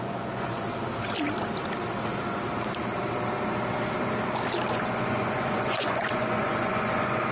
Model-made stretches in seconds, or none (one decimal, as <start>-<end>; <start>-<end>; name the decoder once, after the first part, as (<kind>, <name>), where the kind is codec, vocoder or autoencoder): 0.0-0.7 (vocoder, Vocos); 4.7-7.3